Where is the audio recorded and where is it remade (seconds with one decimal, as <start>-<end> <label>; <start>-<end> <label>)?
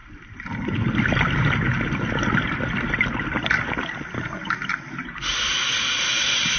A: 0.0-6.6 recorded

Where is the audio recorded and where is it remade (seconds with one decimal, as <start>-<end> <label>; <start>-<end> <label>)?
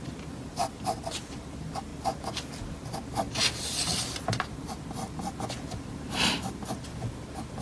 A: 0.0-7.6 recorded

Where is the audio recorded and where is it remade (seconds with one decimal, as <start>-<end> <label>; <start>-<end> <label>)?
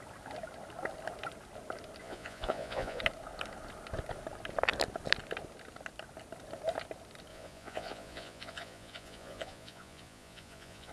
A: 0.0-2.0 recorded; 2.0-3.0 remade; 3.0-7.3 recorded; 7.3-10.9 remade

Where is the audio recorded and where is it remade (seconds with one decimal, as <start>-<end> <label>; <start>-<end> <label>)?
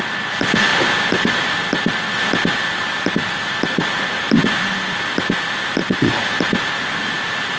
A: 0.0-5.8 recorded; 5.8-6.3 remade; 6.3-7.6 recorded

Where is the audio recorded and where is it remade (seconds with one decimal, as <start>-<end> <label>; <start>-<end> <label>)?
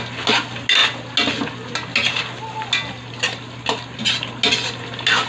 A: 0.0-5.3 recorded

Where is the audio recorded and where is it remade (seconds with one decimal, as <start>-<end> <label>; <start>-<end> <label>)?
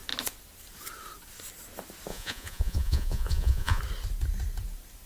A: 0.0-2.1 recorded; 2.1-3.8 remade; 3.8-5.1 recorded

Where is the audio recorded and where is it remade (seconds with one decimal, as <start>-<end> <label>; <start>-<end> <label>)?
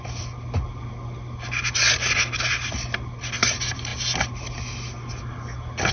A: 0.0-5.9 recorded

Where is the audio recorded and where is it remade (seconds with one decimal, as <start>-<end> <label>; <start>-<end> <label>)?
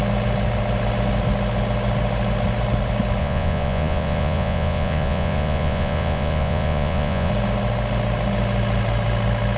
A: 0.0-3.2 recorded; 3.2-7.3 remade; 7.3-9.6 recorded